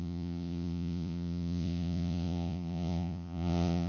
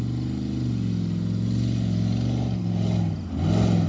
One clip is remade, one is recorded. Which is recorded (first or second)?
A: second